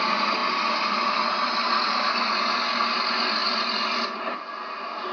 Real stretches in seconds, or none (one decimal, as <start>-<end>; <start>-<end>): 0.0-5.1